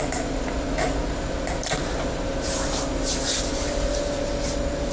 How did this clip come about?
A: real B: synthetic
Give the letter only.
A